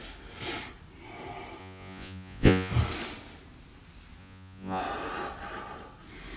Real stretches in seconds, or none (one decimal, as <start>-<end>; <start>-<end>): 0.0-1.6; 2.7-4.2; 4.8-6.4